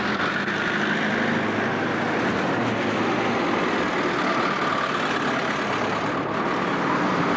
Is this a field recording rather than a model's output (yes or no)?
yes